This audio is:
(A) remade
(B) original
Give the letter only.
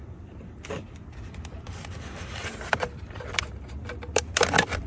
A